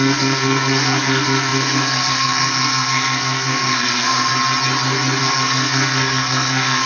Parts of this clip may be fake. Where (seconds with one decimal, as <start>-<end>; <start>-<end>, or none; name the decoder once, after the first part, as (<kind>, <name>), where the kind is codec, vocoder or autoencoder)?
0.0-4.3 (codec, SNAC); 5.2-6.9